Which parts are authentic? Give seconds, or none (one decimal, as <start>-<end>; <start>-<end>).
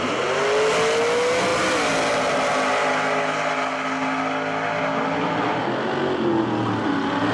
0.0-7.3